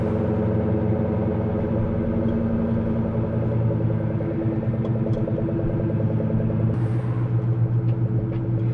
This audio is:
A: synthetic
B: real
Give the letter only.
B